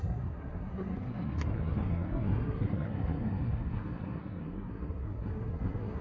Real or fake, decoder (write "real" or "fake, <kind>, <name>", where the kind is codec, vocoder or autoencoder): fake, codec, SNAC